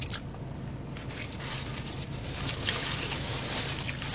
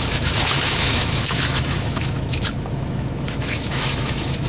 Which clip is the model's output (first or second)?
second